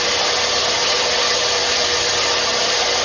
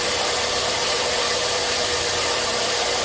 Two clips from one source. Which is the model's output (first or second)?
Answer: second